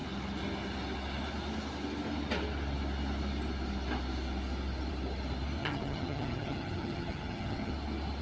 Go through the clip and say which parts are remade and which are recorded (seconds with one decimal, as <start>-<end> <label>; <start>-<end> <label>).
0.0-5.6 recorded; 5.6-7.7 remade; 7.7-8.2 recorded

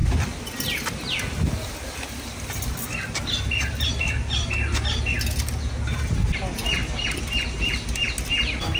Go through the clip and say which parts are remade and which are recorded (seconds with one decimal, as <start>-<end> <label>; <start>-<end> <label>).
0.0-8.8 recorded